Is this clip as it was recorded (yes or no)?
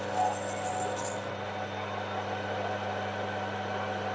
yes